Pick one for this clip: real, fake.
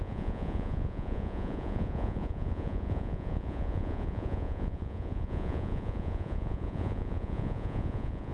fake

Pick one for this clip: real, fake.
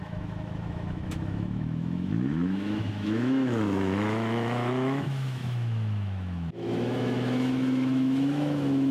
fake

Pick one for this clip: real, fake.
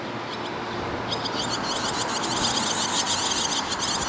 real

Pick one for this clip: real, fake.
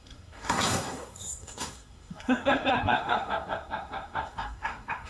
fake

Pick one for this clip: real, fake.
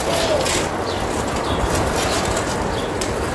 real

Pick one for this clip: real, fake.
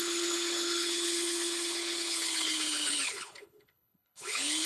fake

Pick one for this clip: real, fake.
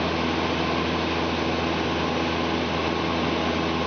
real